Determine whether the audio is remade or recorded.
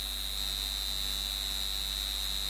recorded